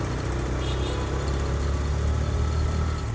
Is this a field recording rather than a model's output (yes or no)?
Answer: yes